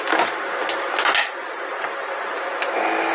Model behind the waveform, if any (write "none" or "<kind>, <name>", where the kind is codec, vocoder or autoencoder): none